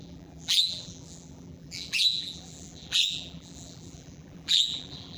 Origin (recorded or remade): remade